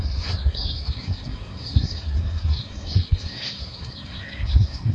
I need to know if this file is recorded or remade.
remade